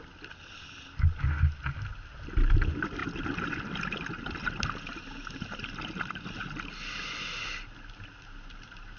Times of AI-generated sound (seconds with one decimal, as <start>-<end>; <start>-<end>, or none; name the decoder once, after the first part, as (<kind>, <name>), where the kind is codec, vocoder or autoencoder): none